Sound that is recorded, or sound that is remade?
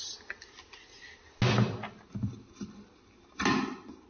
recorded